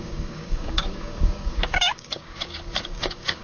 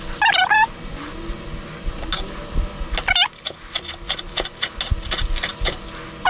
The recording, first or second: second